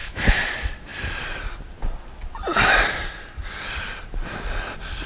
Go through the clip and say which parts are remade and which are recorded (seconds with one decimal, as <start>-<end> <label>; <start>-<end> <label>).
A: 0.0-0.5 remade; 0.5-5.1 recorded